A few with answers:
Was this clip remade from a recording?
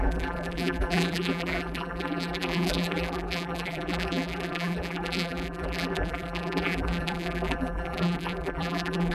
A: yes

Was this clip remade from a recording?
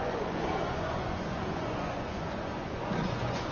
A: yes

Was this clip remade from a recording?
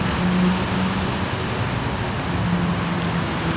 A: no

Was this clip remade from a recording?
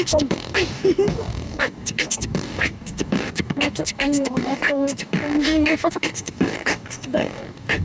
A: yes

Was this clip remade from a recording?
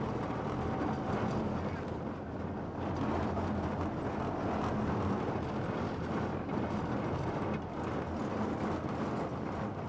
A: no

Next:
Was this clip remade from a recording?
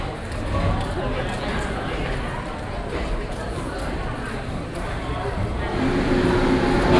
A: no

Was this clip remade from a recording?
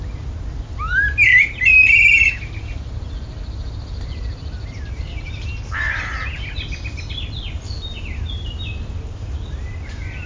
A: no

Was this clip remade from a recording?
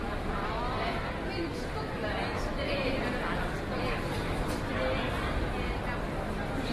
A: no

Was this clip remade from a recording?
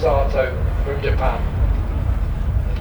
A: no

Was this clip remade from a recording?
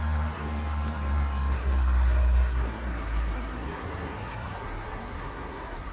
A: yes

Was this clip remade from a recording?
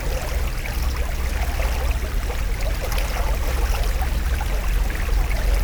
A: no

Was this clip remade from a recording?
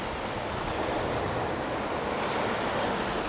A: no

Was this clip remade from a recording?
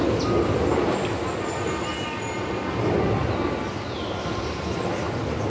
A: no